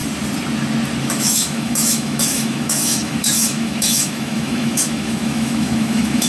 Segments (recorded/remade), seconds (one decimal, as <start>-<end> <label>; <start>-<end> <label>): 0.0-1.0 recorded; 1.0-6.3 remade